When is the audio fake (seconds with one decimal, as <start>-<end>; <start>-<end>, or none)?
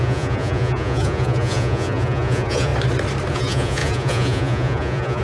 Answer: 0.0-2.7; 3.3-5.2